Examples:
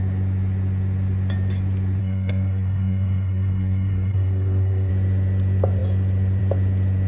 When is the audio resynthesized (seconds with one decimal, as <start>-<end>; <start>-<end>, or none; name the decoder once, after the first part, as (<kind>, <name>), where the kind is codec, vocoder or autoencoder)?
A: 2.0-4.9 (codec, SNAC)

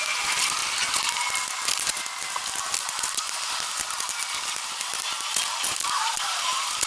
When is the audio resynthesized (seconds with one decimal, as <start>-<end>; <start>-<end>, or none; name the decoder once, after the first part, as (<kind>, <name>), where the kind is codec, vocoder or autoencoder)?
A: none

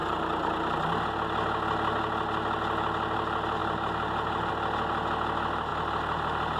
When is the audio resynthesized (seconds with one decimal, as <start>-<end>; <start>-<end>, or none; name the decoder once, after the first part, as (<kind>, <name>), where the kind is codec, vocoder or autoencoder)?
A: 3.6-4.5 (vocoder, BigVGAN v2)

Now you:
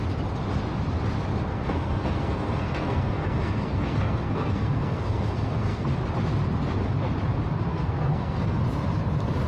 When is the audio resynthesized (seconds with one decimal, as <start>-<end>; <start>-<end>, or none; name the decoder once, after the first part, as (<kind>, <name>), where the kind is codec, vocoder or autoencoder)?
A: 1.5-6.0 (codec, SNAC); 7.7-8.6